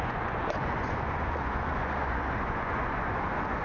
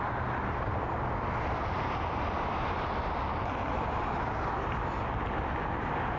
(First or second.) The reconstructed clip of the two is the first